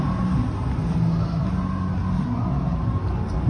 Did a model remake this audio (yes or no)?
no